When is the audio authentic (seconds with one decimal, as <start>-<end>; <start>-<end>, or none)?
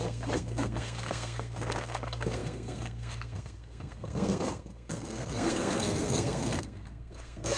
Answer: none